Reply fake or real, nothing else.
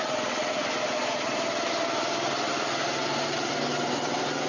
real